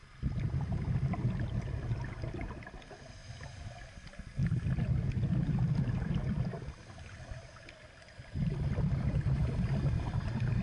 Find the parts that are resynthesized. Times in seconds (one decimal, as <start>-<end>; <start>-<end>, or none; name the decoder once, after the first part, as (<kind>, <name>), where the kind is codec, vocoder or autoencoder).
0.0-3.2 (vocoder, BigVGAN v2); 3.9-4.4; 5.7-10.6